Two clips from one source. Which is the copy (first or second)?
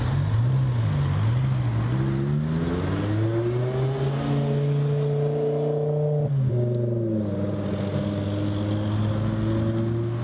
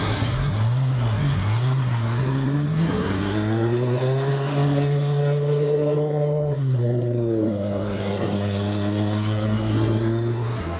second